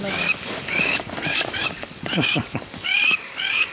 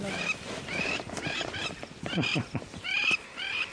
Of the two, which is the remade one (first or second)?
first